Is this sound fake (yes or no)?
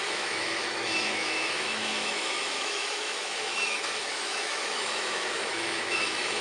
yes